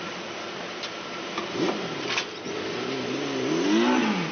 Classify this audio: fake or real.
real